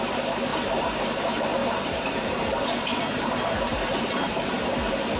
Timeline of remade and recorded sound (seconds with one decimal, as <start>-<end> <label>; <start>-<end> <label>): 0.0-0.5 recorded; 0.5-1.0 remade; 1.0-1.6 recorded; 1.6-4.7 remade; 4.7-5.2 recorded